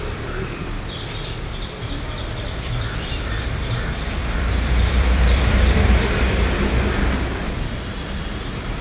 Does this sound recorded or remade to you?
remade